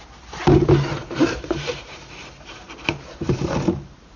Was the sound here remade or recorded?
remade